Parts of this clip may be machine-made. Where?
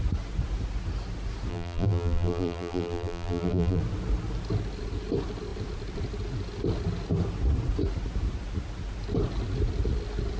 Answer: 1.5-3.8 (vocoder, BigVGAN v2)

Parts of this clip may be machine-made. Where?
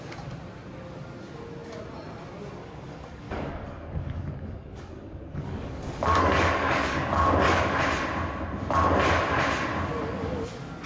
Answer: 2.6-7.8 (codec, DAC); 9.9-10.5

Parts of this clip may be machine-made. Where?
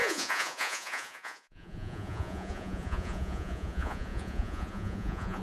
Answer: 0.0-5.4 (vocoder, Vocos)